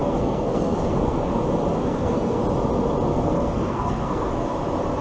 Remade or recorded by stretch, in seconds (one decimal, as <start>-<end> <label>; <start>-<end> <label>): 0.0-1.4 remade; 1.4-1.8 recorded; 1.8-2.4 remade; 2.4-3.1 recorded; 3.1-4.3 remade; 4.3-5.0 recorded